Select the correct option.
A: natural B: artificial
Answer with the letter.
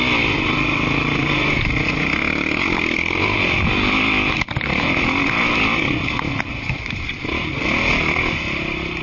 A